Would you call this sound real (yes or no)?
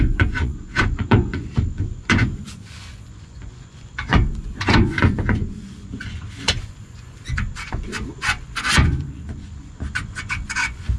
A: no